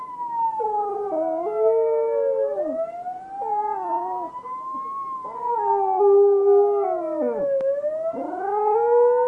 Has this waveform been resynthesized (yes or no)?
no